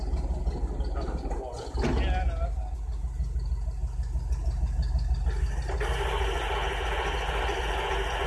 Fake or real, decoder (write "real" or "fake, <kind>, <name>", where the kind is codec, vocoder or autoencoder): real